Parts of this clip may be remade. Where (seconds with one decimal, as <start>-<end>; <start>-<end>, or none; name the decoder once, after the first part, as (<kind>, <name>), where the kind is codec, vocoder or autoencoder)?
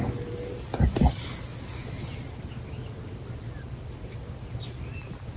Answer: none